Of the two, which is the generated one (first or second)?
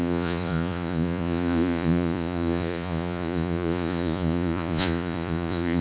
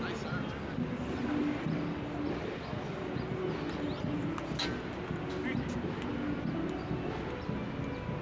first